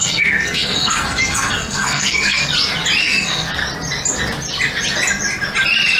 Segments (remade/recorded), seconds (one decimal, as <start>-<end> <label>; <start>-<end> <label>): 0.0-2.4 remade; 2.4-3.0 recorded; 3.0-3.6 remade; 3.6-6.0 recorded